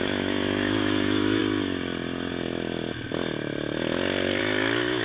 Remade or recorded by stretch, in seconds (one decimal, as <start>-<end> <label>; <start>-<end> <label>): 0.0-1.4 remade; 1.4-4.4 recorded; 4.4-5.0 remade